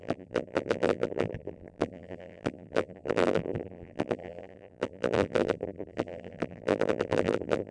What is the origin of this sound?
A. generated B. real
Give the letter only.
A